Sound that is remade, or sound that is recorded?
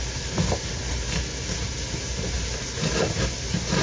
recorded